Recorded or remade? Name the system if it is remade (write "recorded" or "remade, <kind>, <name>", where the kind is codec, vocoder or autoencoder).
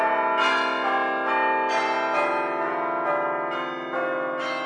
recorded